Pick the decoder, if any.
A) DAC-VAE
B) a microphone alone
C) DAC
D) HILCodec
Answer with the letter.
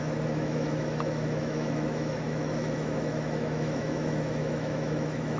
A